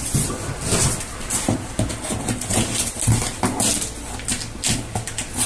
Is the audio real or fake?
real